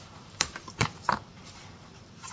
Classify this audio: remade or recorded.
remade